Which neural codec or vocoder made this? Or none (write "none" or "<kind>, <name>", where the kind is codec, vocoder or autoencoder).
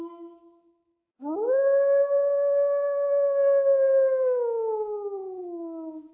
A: codec, DAC